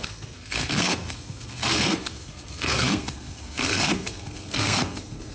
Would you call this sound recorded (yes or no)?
no